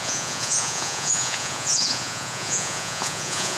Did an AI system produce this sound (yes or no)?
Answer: yes